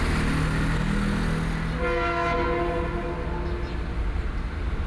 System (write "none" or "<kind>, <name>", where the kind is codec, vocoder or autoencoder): none